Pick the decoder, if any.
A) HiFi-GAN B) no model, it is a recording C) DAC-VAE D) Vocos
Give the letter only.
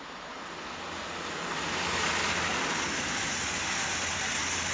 B